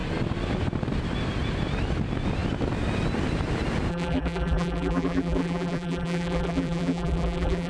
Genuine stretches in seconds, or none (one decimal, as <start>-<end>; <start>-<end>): 0.0-3.9